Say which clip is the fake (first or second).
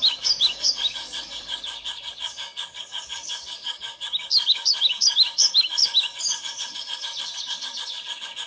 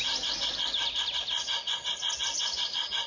first